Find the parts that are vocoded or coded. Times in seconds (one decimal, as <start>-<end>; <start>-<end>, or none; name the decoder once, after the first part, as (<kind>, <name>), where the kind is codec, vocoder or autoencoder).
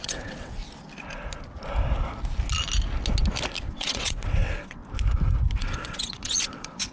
0.0-0.6 (vocoder, WaveNeXt); 3.6-4.8; 5.6-6.9